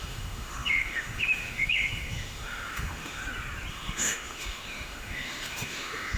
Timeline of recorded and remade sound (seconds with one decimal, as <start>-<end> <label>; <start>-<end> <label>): 0.0-3.2 remade; 3.2-3.7 recorded; 3.7-6.2 remade